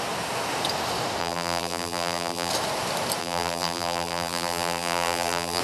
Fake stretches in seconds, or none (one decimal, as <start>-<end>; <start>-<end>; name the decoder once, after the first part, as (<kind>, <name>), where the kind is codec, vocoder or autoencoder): 1.2-2.5 (vocoder, BigVGAN v2); 3.2-5.6

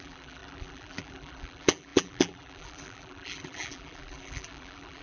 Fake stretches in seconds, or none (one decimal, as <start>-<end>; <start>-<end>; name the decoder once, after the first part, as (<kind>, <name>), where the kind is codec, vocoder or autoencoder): 0.0-5.0 (vocoder, BigVGAN v2)